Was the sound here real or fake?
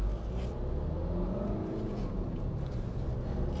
real